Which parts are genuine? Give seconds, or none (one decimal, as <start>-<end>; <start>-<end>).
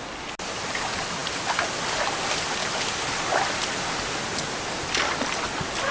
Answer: 0.0-5.9